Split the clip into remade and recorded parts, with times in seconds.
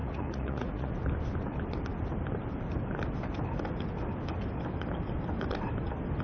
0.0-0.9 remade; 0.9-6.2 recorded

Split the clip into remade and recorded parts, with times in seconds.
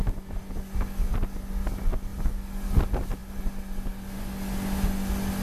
0.0-5.4 recorded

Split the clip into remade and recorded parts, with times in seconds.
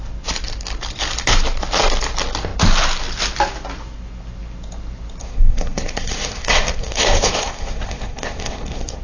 0.0-5.2 recorded; 5.2-9.0 remade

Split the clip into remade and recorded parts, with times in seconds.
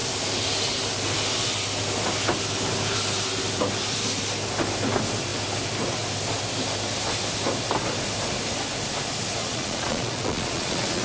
0.0-9.4 recorded; 9.4-11.0 remade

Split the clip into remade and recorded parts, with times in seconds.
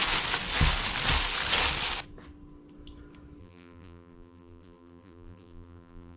0.0-3.4 recorded; 3.4-6.2 remade